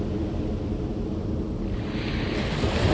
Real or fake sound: real